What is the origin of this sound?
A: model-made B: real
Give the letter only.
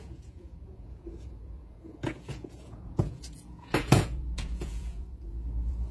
A